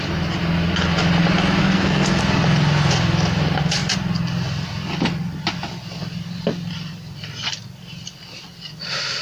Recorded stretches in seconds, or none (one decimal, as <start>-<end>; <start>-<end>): 0.0-1.6; 2.2-9.2